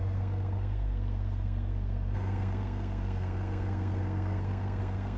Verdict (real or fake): fake